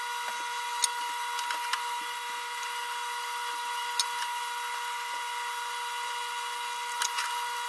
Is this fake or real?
real